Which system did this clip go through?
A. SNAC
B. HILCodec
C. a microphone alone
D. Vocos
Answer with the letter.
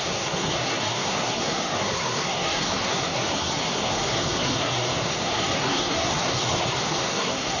A